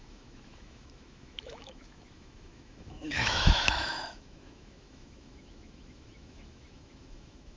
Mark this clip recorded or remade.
remade